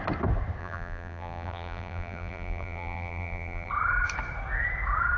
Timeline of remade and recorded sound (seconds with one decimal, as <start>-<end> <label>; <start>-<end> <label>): 0.0-0.6 recorded; 0.6-3.7 remade; 3.7-5.2 recorded